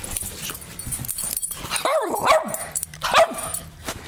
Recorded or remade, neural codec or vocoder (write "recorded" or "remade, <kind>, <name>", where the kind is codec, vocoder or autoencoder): remade, vocoder, BigVGAN v2